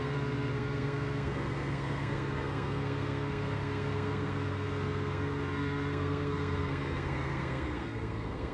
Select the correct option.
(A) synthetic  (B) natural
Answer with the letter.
A